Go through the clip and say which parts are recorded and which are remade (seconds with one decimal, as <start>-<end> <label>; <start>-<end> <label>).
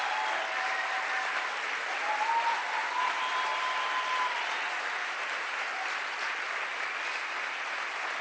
0.0-8.2 recorded